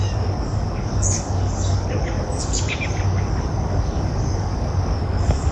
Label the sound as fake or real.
fake